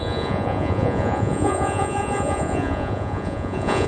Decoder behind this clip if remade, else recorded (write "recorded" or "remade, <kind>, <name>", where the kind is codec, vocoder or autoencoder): remade, vocoder, Vocos